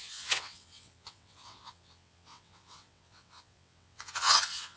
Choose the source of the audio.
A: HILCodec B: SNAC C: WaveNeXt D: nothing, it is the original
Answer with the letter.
C